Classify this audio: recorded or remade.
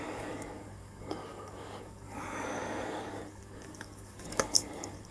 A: remade